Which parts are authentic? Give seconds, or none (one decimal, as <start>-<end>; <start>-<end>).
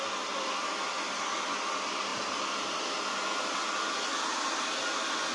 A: 0.0-5.3